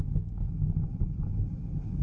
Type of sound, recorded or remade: recorded